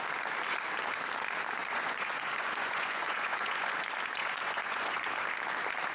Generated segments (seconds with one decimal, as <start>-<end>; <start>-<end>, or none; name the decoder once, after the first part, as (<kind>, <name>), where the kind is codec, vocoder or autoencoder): 1.6-3.7 (vocoder, Vocos); 4.2-5.0